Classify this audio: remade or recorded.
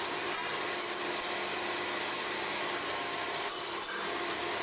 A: recorded